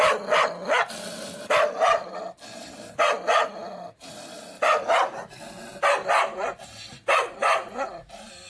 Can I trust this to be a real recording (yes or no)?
yes